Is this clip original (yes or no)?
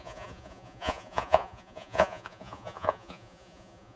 no